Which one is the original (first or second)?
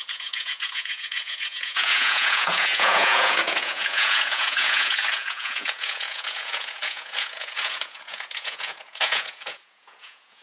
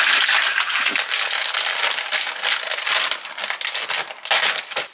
second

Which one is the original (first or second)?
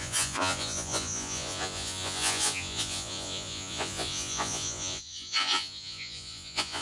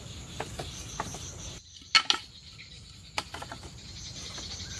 second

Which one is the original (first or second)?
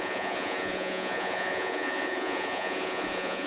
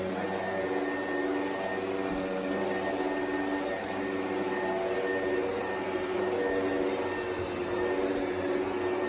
second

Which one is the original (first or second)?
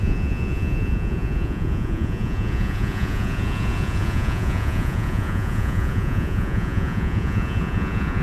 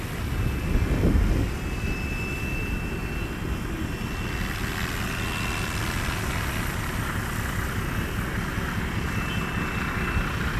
second